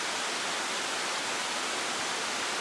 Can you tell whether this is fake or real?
real